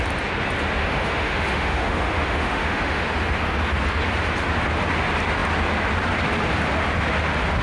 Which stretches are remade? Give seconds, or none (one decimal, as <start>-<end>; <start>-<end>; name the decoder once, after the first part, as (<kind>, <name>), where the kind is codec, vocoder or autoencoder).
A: 0.8-3.0 (autoencoder, DAC-VAE)